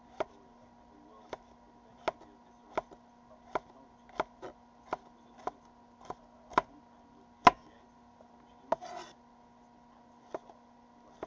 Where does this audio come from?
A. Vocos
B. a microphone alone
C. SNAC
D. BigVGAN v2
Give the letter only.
B